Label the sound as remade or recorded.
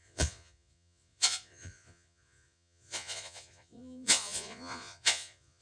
remade